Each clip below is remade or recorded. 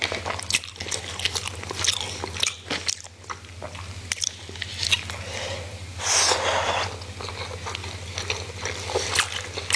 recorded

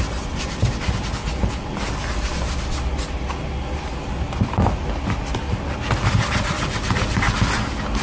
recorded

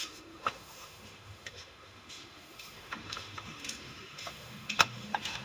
remade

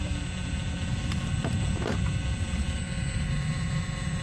recorded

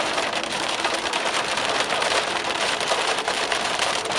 remade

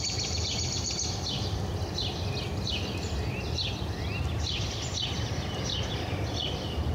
recorded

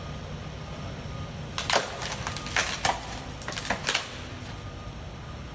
recorded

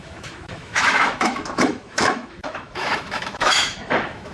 remade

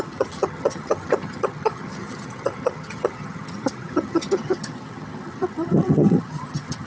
remade